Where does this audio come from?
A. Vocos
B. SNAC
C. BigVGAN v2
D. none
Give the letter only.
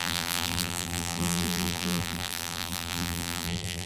C